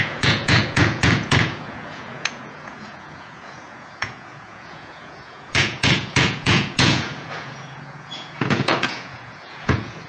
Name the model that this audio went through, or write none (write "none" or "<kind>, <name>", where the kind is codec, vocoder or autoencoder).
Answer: vocoder, Vocos